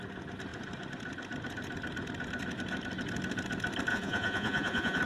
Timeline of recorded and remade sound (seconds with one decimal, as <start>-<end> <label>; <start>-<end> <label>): 0.0-3.9 recorded; 3.9-5.0 remade